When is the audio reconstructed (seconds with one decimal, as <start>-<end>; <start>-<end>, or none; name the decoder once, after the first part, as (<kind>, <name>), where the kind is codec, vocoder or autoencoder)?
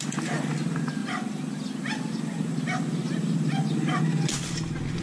none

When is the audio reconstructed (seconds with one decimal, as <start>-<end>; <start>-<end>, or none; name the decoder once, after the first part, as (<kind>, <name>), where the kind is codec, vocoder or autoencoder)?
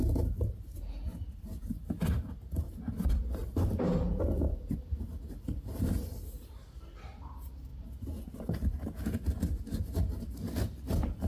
none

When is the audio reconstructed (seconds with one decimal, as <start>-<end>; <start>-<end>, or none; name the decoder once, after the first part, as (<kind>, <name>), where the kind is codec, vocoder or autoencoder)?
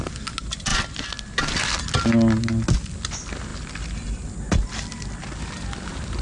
none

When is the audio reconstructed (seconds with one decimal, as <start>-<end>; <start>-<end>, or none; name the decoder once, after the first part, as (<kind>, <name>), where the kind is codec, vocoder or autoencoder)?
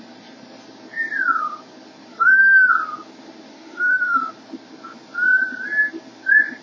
2.1-2.7 (autoencoder, DAC-VAE); 3.5-4.3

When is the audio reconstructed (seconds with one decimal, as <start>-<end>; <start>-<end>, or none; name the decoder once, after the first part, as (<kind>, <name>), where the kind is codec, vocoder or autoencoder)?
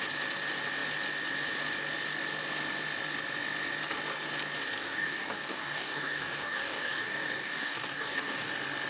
4.8-8.5 (codec, DAC)